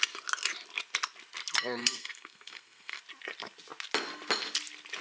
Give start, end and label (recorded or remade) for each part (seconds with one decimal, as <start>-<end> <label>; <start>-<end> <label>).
0.0-1.8 recorded; 1.8-3.0 remade; 3.0-5.0 recorded